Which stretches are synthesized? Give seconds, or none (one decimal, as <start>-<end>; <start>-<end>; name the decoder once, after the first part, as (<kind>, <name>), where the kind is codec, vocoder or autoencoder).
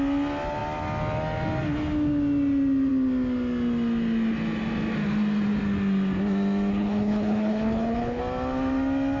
6.7-8.2 (codec, HILCodec)